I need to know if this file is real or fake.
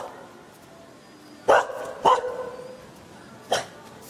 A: real